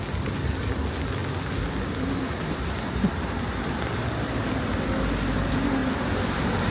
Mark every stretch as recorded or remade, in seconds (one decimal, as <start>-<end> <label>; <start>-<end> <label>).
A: 0.0-6.7 recorded